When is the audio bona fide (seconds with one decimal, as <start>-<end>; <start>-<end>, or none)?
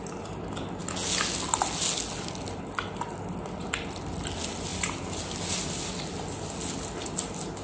0.0-7.6